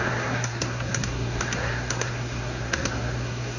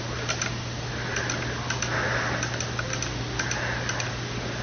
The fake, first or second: first